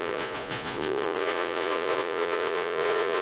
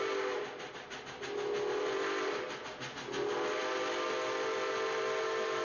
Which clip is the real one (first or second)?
second